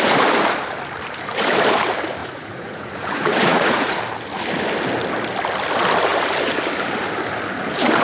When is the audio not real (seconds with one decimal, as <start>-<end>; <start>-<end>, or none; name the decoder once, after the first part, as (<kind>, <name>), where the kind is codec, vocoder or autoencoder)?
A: 2.2-4.0 (vocoder, Vocos)